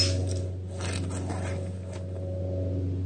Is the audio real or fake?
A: real